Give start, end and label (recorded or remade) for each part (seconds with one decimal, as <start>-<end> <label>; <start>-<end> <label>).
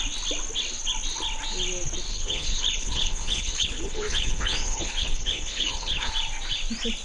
0.0-2.1 recorded; 2.1-6.1 remade; 6.1-7.0 recorded